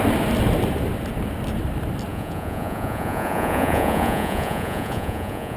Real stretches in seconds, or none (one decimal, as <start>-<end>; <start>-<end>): 0.0-2.1